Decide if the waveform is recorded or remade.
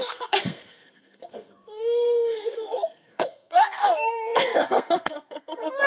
remade